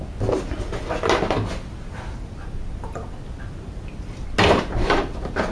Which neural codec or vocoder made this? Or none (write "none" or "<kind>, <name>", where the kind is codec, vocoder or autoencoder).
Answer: none